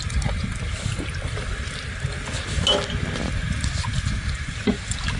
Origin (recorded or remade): recorded